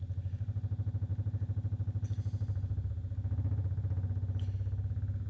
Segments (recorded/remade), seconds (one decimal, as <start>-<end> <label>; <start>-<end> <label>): 0.0-5.3 recorded